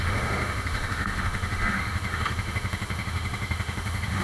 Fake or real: fake